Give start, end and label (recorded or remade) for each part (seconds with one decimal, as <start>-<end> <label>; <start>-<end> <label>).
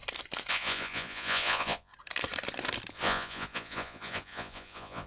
0.0-0.5 recorded; 0.5-1.9 remade; 1.9-2.9 recorded; 2.9-5.1 remade